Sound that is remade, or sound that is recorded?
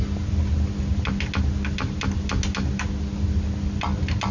recorded